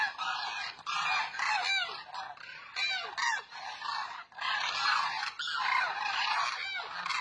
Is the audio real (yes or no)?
yes